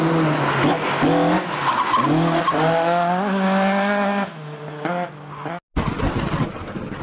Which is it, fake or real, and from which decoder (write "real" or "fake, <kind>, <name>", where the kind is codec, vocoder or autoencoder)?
real